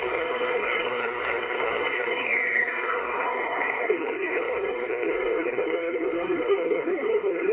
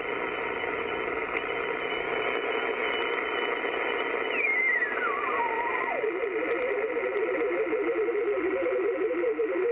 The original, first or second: second